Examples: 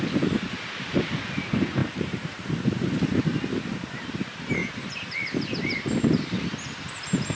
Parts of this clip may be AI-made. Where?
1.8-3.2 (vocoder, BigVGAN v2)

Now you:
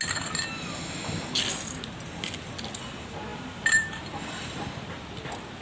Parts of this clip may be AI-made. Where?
3.3-4.9 (vocoder, BigVGAN v2)

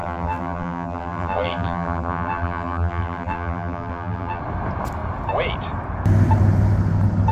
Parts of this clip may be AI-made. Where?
0.0-4.4 (vocoder, BigVGAN v2)